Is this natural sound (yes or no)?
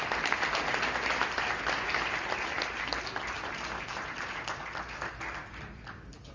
yes